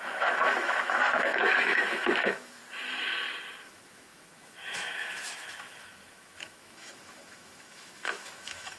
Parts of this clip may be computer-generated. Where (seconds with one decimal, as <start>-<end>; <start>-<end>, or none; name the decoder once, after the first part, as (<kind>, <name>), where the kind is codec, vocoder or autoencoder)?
0.0-2.6 (autoencoder, DAC-VAE); 3.6-8.8